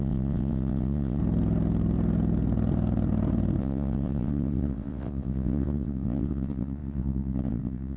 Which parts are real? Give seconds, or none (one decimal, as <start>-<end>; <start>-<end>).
1.2-3.6